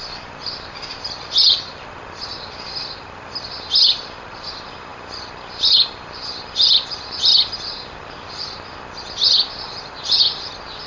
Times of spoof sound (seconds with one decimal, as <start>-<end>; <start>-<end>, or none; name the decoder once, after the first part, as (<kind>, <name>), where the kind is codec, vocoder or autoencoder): none